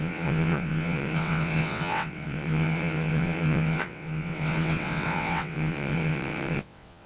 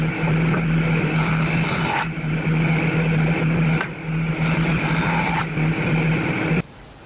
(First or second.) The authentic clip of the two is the second